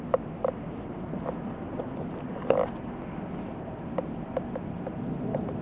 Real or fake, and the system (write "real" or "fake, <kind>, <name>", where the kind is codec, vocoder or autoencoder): real